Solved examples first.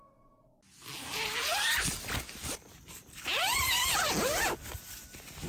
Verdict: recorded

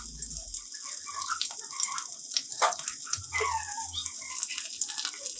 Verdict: recorded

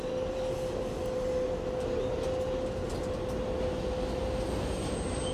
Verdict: recorded